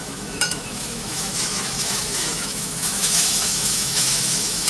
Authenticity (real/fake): fake